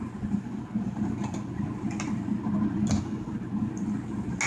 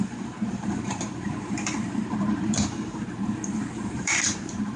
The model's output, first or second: second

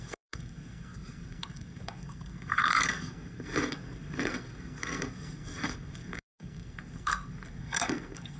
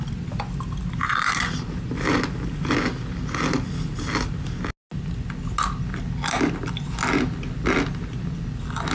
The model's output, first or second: first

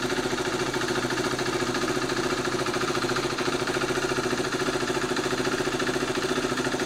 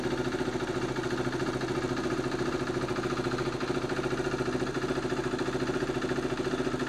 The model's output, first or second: first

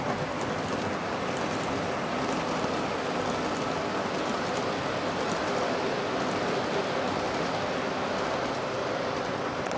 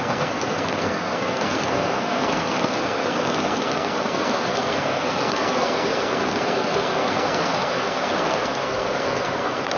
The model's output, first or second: second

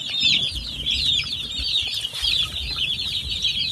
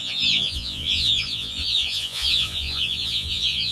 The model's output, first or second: second